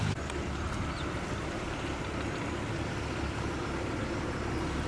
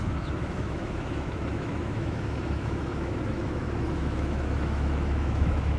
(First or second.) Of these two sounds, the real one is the first